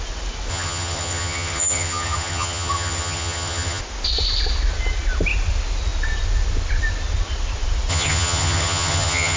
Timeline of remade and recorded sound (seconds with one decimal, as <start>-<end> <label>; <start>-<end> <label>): 0.0-0.5 recorded; 0.5-3.8 remade; 3.8-7.9 recorded; 7.9-9.4 remade